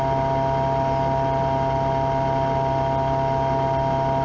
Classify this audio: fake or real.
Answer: real